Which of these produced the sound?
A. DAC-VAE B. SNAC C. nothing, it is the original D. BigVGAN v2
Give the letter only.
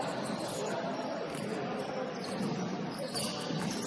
C